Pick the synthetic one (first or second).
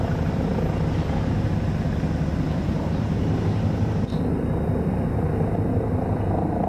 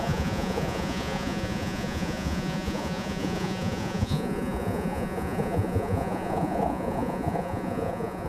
second